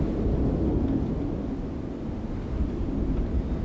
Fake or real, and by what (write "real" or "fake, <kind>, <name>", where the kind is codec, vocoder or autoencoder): real